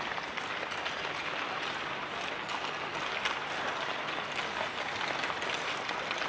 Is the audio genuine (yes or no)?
yes